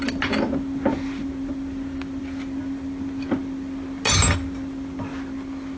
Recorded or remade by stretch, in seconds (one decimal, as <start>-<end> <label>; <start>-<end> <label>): 0.0-5.8 recorded